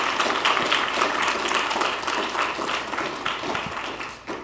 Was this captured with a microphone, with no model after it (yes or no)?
no